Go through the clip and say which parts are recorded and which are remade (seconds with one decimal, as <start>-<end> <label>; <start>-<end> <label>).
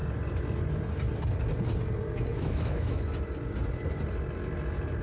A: 0.0-2.3 recorded; 2.3-3.0 remade; 3.0-5.0 recorded